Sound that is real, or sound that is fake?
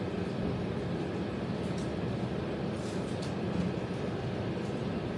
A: real